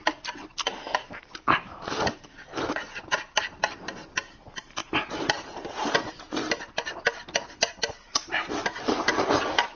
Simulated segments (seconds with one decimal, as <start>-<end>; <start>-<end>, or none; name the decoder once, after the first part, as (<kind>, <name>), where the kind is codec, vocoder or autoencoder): 0.0-2.5 (vocoder, BigVGAN v2); 3.0-4.8; 7.1-9.8